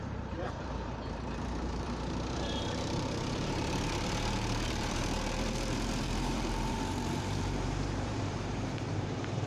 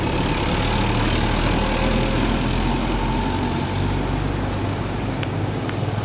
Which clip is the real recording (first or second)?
second